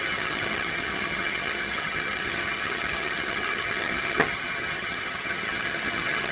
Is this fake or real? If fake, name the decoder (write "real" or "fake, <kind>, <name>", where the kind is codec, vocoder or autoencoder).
fake, vocoder, HiFi-GAN